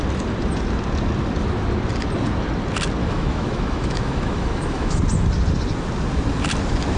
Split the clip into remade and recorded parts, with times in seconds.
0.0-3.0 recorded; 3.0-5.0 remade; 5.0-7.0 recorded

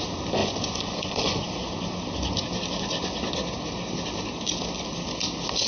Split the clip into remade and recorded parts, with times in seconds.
0.0-0.4 recorded; 0.4-1.4 remade; 1.4-5.7 recorded